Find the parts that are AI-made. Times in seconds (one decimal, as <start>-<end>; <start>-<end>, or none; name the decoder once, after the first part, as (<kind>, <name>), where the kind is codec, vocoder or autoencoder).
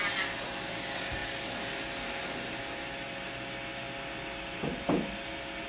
none